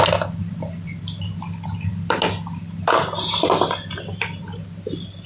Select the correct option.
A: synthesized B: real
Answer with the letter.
B